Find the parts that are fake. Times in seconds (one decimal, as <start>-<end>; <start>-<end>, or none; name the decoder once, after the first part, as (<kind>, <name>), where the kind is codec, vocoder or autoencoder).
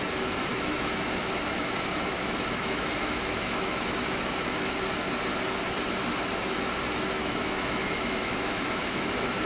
0.5-4.7 (autoencoder, DAC-VAE); 7.2-9.5